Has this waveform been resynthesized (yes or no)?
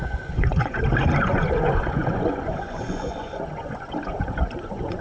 yes